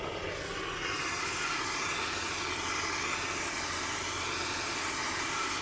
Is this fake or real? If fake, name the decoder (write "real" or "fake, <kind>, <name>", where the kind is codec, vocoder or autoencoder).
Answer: real